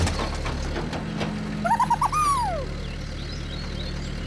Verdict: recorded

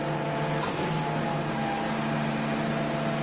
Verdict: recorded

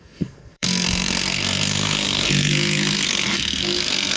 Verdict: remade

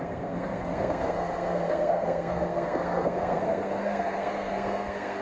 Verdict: remade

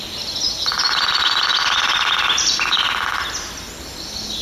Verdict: recorded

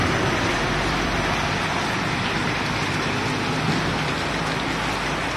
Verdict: recorded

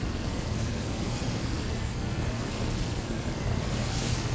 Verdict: remade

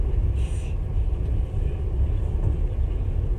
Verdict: recorded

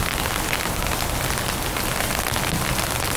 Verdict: recorded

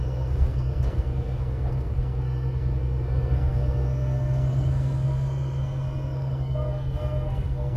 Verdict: remade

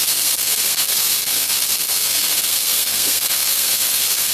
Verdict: remade